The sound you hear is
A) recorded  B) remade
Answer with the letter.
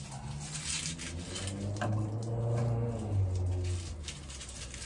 A